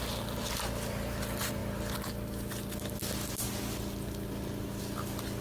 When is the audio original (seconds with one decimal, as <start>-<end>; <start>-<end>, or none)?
0.0-5.4